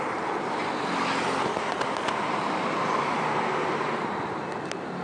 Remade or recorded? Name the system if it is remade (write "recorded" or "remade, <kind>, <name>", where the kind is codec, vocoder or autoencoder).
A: recorded